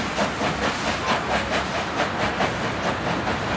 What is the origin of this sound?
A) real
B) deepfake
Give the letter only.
A